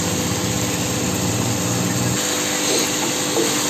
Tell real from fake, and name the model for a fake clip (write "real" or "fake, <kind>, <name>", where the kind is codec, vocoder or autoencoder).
real